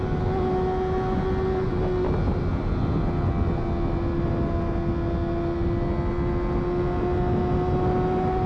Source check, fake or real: real